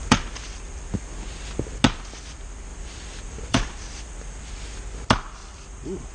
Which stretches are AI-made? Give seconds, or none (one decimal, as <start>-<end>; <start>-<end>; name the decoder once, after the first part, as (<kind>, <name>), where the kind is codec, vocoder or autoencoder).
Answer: 2.7-4.5 (vocoder, BigVGAN v2); 5.4-6.1